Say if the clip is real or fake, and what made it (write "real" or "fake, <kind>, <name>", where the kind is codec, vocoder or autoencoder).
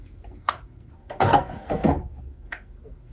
fake, codec, SNAC